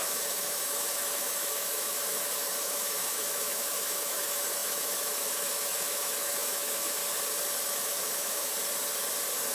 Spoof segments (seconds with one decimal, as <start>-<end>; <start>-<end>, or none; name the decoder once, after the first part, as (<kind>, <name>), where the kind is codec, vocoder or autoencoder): 0.0-7.0 (autoencoder, DAC-VAE); 7.6-8.5